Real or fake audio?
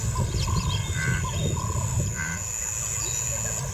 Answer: real